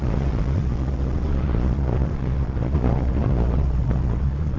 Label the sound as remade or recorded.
remade